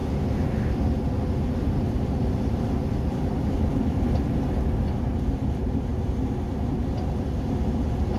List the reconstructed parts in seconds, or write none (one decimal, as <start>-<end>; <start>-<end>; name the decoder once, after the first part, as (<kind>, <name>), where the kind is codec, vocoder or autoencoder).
none